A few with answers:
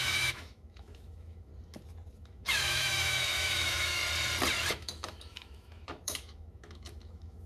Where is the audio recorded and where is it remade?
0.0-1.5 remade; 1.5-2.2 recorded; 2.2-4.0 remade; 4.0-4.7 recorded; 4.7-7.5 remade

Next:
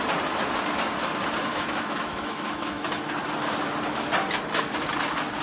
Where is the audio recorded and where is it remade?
0.0-1.5 recorded; 1.5-3.1 remade; 3.1-5.4 recorded

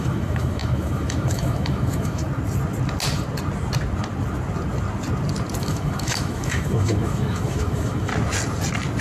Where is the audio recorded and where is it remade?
0.0-2.2 remade; 2.2-5.6 recorded; 5.6-8.1 remade; 8.1-9.0 recorded